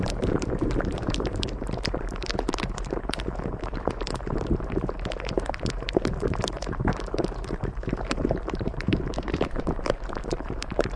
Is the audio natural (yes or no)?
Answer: no